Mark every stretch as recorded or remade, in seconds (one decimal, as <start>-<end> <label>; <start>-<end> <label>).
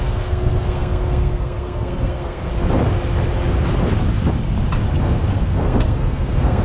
0.0-2.5 remade; 2.5-5.0 recorded; 5.0-6.6 remade